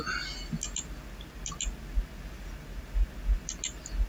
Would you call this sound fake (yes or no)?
no